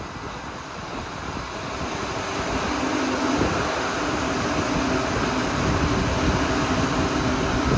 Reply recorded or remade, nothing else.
recorded